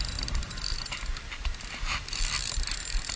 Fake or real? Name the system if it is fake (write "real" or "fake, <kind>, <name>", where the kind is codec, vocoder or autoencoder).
real